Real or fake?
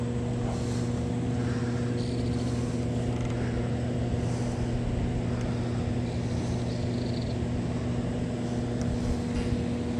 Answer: real